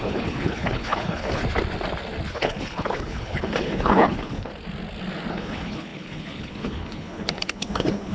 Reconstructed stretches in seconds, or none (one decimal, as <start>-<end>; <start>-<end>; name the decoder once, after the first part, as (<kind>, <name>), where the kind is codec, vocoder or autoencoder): 0.0-1.4 (codec, HILCodec); 2.3-4.5; 5.3-8.1